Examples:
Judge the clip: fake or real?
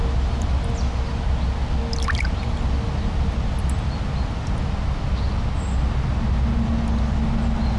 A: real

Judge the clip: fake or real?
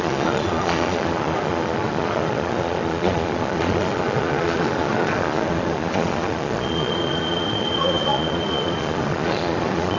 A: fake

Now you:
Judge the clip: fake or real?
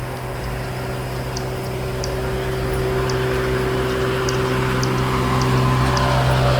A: real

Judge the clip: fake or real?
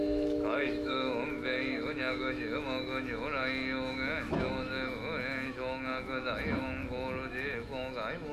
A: fake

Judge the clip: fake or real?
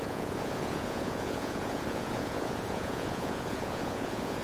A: fake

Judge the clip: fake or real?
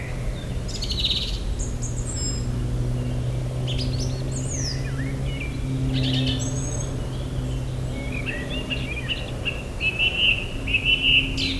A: real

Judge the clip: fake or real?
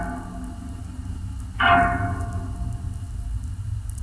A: real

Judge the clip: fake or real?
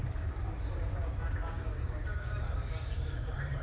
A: fake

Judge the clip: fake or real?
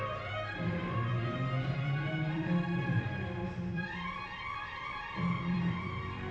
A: fake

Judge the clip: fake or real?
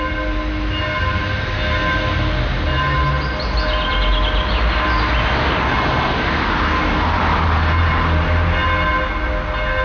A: real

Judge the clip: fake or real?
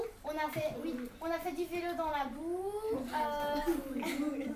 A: fake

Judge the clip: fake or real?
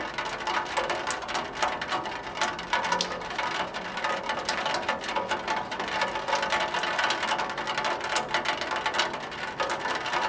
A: real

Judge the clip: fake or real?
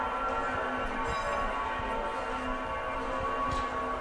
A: real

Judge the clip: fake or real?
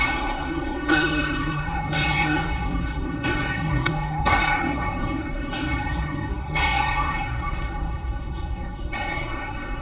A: fake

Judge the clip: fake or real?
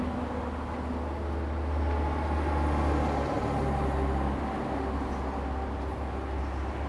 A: real